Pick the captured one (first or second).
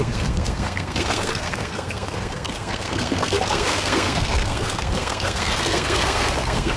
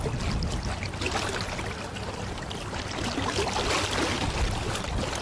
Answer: second